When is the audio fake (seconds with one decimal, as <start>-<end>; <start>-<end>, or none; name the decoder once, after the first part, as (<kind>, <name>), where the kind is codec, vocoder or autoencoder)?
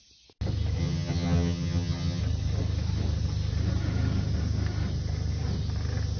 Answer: 0.8-2.2 (vocoder, HiFi-GAN)